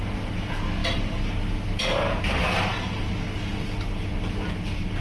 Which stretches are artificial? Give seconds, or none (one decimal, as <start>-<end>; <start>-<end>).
none